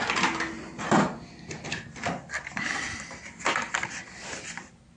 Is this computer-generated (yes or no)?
no